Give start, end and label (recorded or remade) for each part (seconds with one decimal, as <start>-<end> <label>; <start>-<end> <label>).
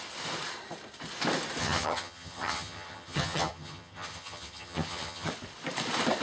0.0-1.6 recorded; 1.6-5.3 remade; 5.3-6.2 recorded